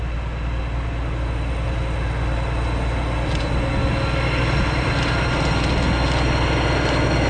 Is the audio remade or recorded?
recorded